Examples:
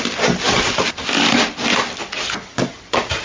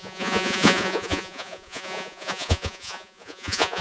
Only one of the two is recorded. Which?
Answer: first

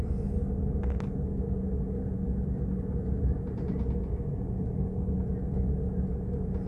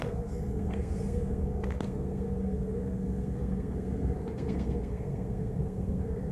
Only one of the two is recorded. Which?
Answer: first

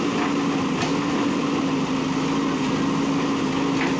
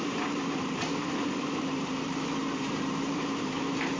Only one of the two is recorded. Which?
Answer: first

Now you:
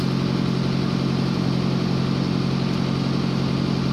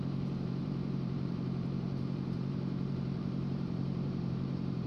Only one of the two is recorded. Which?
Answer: first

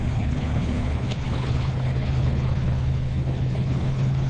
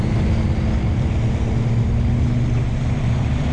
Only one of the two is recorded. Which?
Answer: second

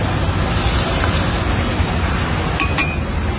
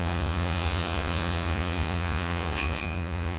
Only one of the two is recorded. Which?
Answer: first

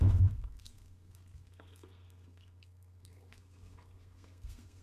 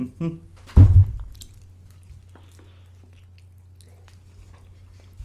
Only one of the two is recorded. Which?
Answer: second